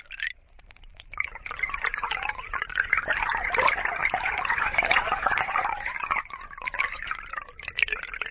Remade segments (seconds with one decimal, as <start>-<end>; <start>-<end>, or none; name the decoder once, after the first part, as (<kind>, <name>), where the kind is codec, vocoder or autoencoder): 0.9-3.0 (vocoder, Vocos); 4.0-7.2